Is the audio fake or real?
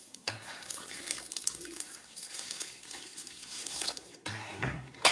fake